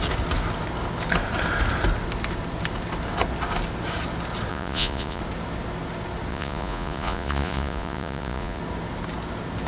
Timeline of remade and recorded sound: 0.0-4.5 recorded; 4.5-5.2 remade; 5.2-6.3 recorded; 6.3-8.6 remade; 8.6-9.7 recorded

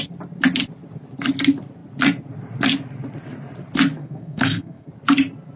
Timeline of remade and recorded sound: 0.0-4.0 recorded; 4.0-4.9 remade; 4.9-5.6 recorded

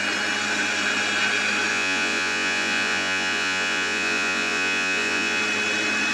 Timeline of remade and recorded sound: 0.0-1.7 recorded; 1.7-5.4 remade; 5.4-6.1 recorded

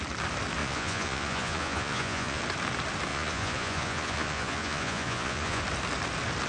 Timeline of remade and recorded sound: 0.0-0.6 recorded; 0.6-2.4 remade; 2.4-3.1 recorded; 3.1-5.6 remade; 5.6-6.5 recorded

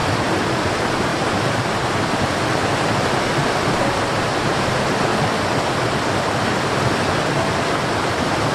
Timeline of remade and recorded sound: 0.0-0.6 recorded; 0.6-2.6 remade; 2.6-4.1 recorded; 4.1-5.1 remade; 5.1-7.9 recorded; 7.9-8.5 remade

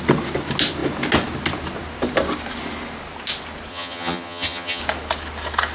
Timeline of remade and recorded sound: 0.0-3.7 recorded; 3.7-4.8 remade; 4.8-5.7 recorded